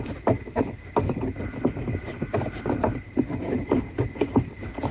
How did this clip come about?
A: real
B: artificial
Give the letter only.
A